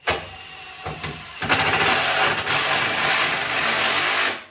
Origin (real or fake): real